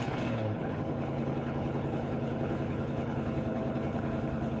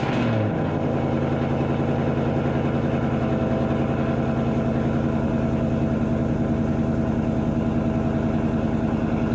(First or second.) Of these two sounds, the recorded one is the second